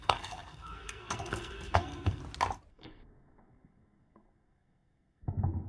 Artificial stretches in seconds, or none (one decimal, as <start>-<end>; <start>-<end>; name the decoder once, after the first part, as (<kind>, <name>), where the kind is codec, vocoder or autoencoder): 0.0-2.2 (codec, SNAC); 2.7-5.7